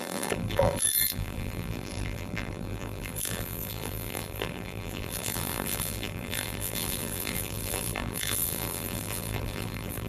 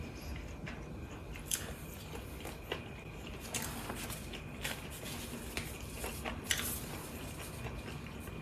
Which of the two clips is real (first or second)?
second